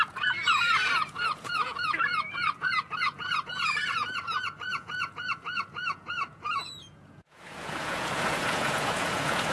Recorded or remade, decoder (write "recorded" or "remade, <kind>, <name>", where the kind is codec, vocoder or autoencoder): remade, vocoder, Vocos